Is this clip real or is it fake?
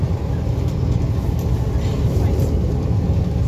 fake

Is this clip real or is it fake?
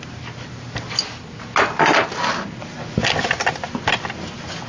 real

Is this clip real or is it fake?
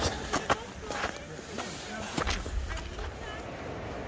real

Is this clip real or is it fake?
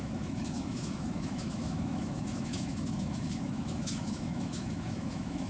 fake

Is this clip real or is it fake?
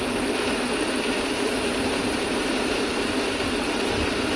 fake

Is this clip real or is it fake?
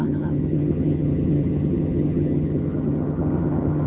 fake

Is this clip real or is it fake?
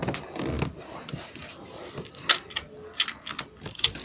real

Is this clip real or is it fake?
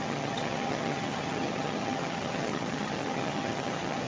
fake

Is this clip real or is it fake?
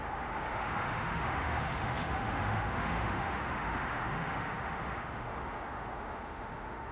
fake